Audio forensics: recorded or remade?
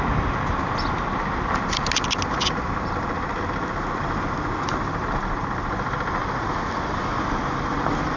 recorded